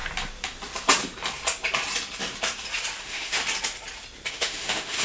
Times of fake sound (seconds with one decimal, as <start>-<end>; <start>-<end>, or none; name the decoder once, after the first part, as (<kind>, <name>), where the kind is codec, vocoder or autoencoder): 3.0-3.4 (autoencoder, DAC-VAE); 4.3-5.0